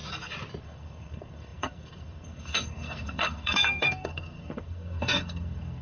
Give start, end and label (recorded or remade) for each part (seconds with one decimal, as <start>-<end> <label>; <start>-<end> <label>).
0.0-0.6 recorded; 0.6-5.8 remade